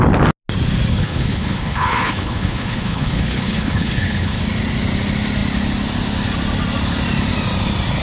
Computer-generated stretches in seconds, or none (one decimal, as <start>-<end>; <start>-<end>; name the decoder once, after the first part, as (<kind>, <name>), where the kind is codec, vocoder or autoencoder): 0.9-4.4 (codec, HILCodec)